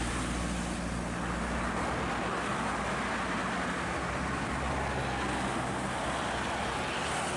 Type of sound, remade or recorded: recorded